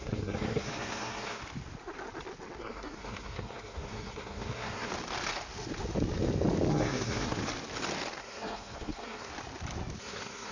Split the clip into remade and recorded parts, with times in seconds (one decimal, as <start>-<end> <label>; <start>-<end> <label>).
0.0-1.4 remade; 1.4-2.6 recorded; 2.6-4.9 remade; 4.9-6.7 recorded; 6.7-7.4 remade; 7.4-8.2 recorded; 8.2-9.3 remade; 9.3-10.0 recorded; 10.0-10.5 remade